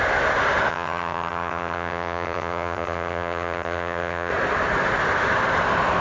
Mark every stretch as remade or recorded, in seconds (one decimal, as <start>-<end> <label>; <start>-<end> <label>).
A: 0.0-0.7 recorded; 0.7-4.3 remade; 4.3-6.0 recorded